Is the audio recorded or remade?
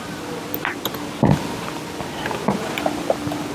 recorded